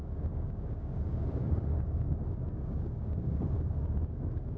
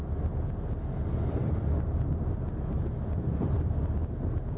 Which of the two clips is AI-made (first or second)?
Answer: first